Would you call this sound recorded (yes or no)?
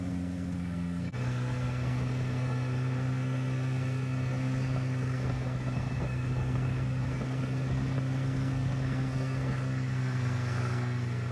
no